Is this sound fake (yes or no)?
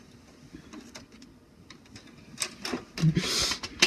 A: no